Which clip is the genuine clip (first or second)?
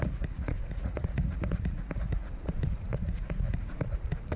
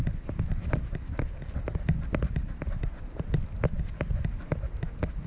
second